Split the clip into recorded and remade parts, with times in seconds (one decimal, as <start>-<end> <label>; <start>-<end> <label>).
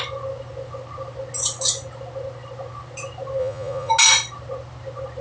0.0-3.4 recorded; 3.4-3.9 remade; 3.9-5.2 recorded